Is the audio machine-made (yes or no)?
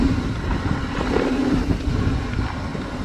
no